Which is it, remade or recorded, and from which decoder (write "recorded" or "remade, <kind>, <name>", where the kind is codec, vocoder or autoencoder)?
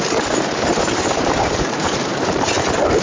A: remade, vocoder, BigVGAN v2